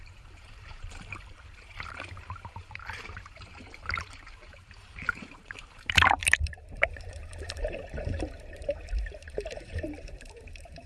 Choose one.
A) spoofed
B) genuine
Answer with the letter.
A